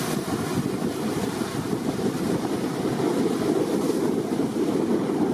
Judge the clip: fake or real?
real